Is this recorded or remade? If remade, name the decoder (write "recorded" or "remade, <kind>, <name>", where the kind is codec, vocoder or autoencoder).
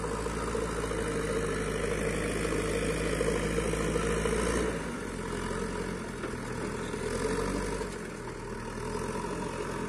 recorded